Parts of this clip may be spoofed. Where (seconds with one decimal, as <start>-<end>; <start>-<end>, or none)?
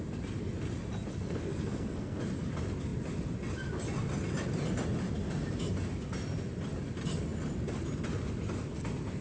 1.1-2.2